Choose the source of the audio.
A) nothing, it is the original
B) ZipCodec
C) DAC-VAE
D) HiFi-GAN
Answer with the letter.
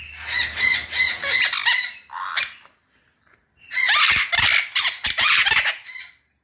A